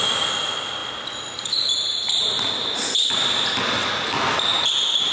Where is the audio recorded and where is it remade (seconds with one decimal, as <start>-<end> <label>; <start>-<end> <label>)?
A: 0.0-5.1 recorded